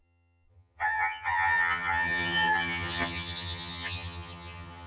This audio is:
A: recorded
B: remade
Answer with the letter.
B